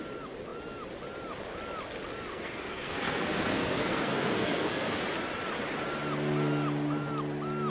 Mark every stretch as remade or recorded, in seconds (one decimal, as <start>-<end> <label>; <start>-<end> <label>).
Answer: 0.0-2.3 recorded; 2.3-5.0 remade; 5.0-7.7 recorded